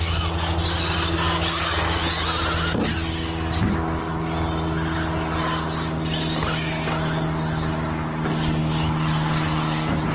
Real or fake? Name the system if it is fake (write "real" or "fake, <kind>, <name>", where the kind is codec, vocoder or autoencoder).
real